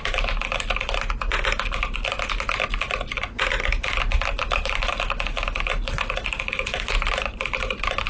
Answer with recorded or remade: recorded